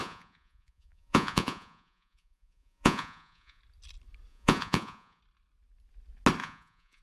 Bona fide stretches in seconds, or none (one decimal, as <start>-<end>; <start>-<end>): 3.6-4.3; 5.2-6.4